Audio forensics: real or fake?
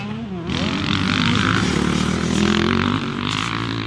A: real